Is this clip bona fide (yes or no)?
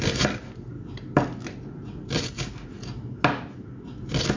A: yes